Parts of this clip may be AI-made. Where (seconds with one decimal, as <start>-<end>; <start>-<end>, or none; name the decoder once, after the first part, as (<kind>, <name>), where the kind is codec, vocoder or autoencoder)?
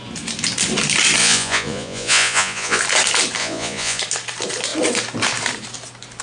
1.2-2.8 (vocoder, Vocos); 3.4-4.0